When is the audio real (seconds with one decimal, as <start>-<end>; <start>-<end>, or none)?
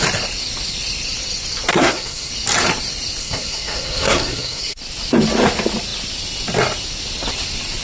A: 0.0-1.7; 2.3-3.2; 4.8-7.8